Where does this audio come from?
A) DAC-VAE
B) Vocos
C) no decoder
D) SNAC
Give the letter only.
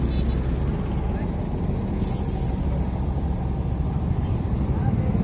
C